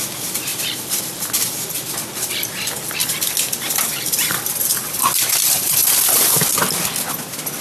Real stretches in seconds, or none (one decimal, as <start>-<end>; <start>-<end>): 0.0-0.5; 1.0-3.0; 5.0-5.8; 6.5-7.6